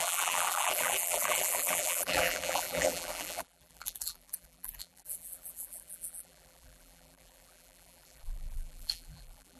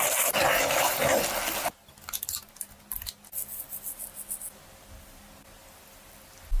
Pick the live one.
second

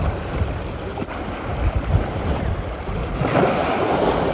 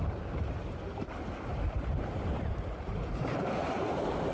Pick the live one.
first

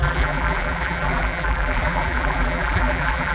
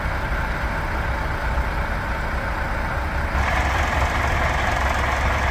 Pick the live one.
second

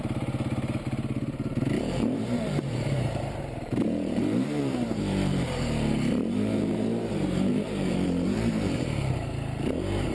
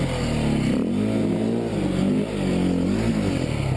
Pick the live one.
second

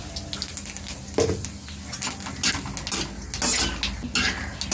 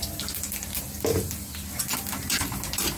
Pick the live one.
first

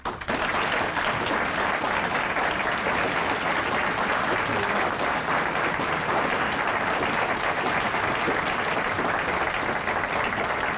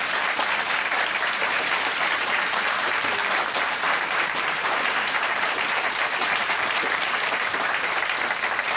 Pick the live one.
first